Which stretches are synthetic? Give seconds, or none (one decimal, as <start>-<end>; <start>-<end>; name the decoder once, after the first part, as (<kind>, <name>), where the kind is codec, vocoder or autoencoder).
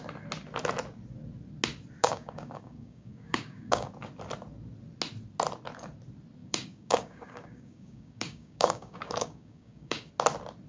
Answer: 2.0-3.9 (codec, DAC); 6.4-10.1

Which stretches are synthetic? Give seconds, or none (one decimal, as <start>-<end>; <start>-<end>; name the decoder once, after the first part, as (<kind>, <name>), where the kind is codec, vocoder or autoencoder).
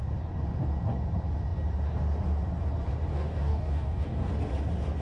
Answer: 3.1-4.3 (codec, DAC)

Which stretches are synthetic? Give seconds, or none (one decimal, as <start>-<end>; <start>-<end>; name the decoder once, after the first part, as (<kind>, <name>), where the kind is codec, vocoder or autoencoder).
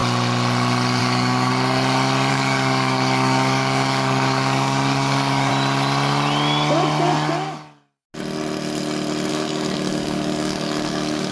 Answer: 1.0-1.5 (codec, DAC); 2.3-5.5; 9.3-11.3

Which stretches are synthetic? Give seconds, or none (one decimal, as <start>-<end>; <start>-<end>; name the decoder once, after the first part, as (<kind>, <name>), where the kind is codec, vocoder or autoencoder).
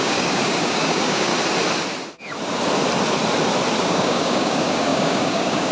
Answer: 0.0-1.3 (codec, DAC); 3.8-5.7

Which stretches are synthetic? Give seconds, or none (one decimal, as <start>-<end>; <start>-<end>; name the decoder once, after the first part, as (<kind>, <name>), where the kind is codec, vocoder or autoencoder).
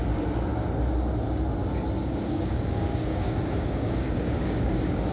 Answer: 2.0-5.1 (codec, DAC)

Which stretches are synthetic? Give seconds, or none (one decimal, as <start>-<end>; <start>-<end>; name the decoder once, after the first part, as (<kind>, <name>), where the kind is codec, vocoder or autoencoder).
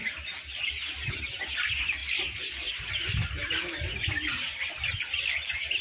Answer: none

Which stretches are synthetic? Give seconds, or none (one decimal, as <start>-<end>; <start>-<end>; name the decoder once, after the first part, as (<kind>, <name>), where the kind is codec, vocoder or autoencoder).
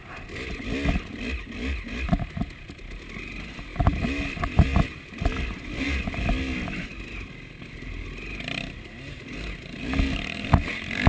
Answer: none